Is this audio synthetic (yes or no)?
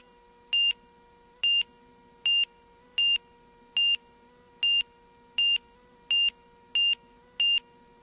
no